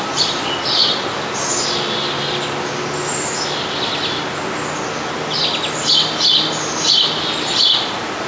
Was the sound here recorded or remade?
recorded